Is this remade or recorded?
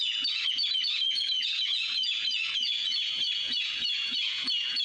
remade